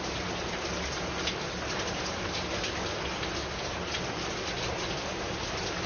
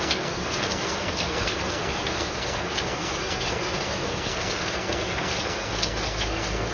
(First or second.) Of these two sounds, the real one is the first